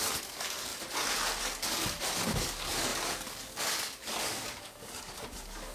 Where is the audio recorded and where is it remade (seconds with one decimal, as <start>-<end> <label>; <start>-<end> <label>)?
0.0-0.7 remade; 0.7-1.4 recorded; 1.4-5.7 remade